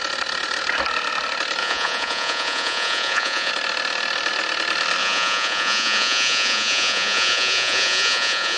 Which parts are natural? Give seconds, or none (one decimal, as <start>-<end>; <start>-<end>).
0.0-1.6; 3.5-5.0